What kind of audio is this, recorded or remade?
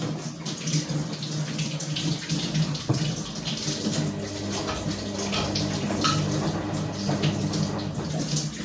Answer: recorded